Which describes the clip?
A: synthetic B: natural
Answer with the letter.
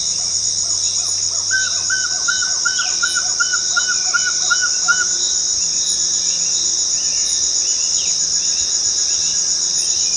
B